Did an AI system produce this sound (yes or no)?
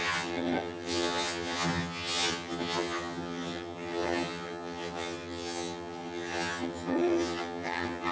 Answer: yes